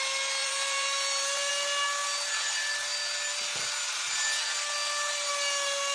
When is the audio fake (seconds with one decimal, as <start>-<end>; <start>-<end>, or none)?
0.4-1.5